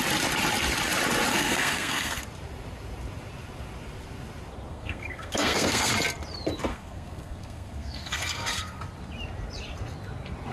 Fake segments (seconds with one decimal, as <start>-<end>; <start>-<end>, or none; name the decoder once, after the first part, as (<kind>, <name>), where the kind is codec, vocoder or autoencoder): 1.3-2.2 (codec, SNAC); 4.7-5.9; 6.7-8.8